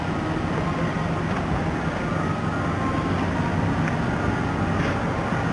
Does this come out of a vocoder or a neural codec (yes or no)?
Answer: no